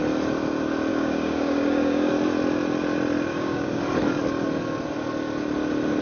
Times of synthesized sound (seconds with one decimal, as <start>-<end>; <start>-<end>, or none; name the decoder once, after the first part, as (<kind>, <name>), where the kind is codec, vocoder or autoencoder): 0.9-2.1 (codec, DAC); 3.3-3.8